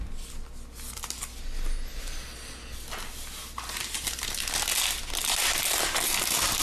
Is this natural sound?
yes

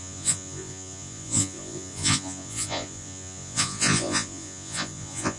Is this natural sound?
no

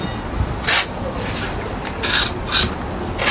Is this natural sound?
yes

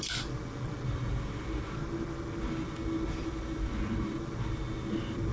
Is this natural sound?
yes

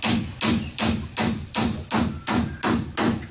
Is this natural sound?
yes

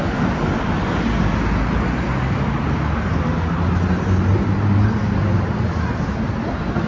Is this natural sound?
yes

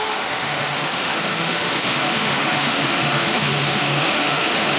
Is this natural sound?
no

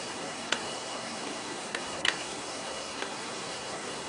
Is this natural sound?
no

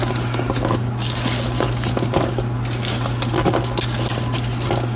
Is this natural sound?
yes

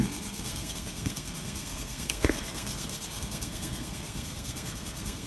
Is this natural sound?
no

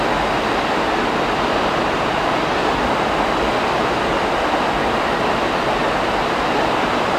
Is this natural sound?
yes